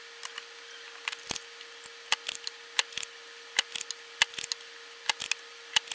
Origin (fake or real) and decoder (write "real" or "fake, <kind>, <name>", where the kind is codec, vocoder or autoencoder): real